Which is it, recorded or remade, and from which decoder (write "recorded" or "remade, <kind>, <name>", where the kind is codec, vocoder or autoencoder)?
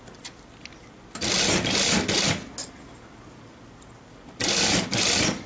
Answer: recorded